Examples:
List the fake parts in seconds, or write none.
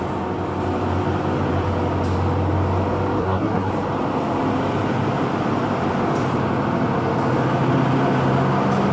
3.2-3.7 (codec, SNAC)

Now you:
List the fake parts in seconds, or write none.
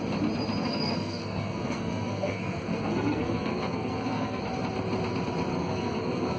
0.6-4.4 (codec, SNAC); 5.5-6.4